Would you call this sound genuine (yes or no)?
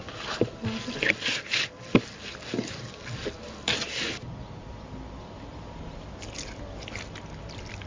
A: yes